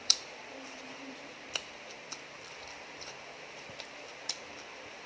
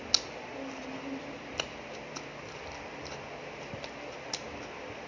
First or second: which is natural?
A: second